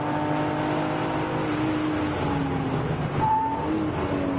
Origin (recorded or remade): recorded